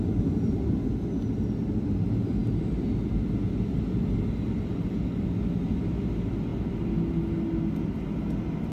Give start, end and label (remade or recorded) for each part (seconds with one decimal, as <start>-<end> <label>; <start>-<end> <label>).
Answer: 0.0-8.7 recorded